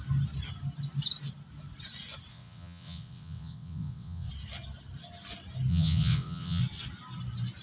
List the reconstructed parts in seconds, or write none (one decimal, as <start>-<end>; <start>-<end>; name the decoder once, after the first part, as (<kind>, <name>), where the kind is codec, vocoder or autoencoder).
2.3-4.3 (vocoder, WaveNeXt); 5.7-6.6